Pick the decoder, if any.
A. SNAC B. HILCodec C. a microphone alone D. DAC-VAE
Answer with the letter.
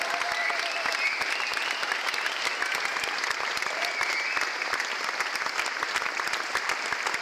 C